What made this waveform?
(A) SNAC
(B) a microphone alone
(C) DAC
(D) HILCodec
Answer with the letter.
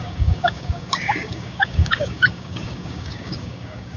C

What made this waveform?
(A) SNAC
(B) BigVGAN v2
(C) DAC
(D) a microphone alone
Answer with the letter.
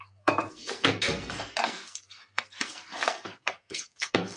A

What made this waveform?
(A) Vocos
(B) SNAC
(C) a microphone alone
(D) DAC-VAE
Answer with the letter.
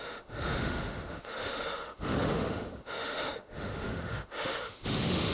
D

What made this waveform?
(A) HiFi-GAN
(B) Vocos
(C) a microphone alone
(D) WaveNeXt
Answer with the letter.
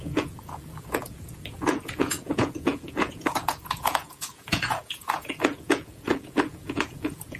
B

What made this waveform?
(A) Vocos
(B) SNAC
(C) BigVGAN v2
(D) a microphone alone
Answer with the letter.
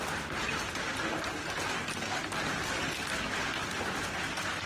D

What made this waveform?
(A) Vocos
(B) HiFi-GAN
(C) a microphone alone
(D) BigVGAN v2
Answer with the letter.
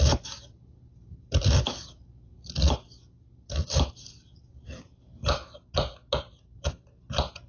C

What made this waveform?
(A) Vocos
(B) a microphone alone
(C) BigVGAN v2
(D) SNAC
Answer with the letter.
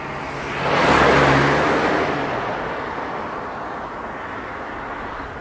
B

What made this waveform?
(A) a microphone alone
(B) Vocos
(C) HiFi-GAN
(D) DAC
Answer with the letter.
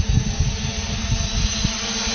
A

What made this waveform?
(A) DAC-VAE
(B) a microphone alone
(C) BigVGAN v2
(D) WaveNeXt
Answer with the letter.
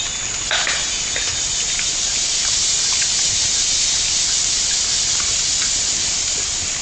B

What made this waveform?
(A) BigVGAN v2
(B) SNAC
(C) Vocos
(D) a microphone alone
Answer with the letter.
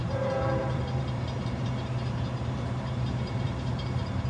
A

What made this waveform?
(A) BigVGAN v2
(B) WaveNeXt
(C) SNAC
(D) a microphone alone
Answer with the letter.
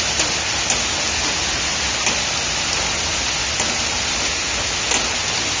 D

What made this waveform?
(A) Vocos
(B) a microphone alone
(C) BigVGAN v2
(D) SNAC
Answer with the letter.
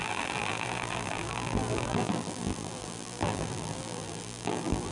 C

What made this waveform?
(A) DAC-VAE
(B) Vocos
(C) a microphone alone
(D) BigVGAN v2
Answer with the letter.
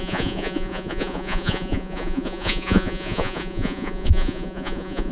B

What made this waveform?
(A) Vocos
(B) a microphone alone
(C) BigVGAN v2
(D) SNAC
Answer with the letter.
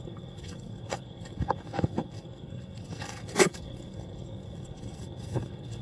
D